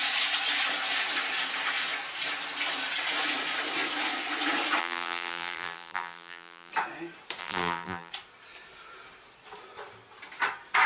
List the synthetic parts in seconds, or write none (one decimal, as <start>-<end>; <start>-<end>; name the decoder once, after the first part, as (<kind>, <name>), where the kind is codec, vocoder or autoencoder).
4.8-6.7 (vocoder, BigVGAN v2); 7.4-8.1